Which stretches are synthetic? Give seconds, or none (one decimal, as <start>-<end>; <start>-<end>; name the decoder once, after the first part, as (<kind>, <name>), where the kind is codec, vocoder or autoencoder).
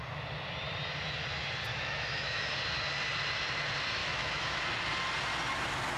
1.7-2.5 (autoencoder, DAC-VAE); 4.0-4.6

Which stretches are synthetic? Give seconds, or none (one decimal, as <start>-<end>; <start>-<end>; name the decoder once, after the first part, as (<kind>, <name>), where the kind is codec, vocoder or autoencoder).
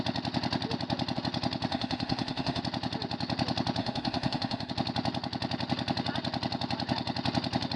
1.7-2.6 (autoencoder, DAC-VAE); 3.8-4.7